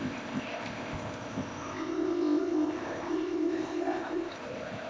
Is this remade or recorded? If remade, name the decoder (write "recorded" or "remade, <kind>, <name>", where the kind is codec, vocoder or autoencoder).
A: remade, codec, ZipCodec